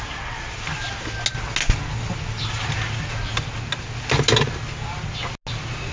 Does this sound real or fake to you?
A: real